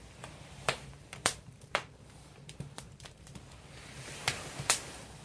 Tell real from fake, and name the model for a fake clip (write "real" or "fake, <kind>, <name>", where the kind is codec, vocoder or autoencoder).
fake, vocoder, BigVGAN v2